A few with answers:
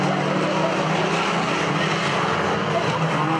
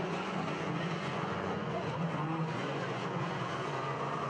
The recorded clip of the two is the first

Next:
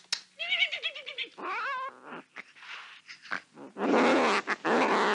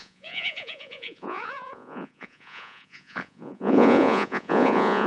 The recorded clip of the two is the first